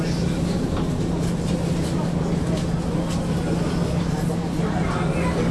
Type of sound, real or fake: real